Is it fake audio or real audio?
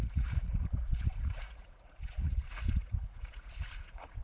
fake